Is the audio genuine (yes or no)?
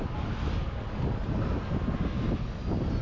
yes